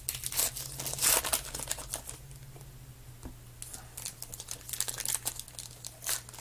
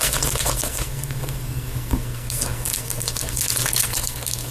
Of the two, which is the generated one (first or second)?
second